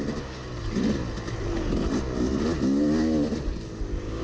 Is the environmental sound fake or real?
real